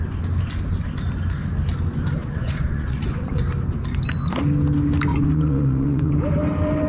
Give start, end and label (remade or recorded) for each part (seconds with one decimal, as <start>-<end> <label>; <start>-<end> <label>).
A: 0.0-2.2 recorded; 2.2-3.4 remade; 3.4-5.1 recorded; 5.1-6.1 remade; 6.1-6.9 recorded